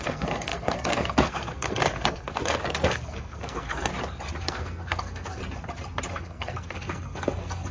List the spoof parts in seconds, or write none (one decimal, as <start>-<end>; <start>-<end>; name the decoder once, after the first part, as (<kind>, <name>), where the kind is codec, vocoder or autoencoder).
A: 0.0-3.9 (codec, SNAC); 4.4-5.4; 6.1-7.7